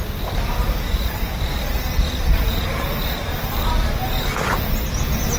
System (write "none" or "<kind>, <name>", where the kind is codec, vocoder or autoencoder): none